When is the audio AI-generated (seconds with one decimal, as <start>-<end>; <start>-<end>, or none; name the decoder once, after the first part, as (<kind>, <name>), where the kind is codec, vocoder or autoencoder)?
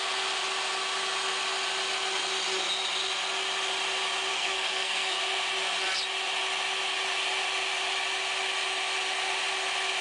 4.3-5.2 (codec, SNAC)